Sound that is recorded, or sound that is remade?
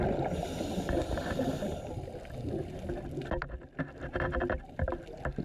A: recorded